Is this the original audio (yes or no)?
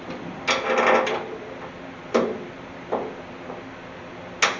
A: yes